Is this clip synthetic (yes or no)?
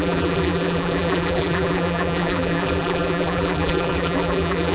yes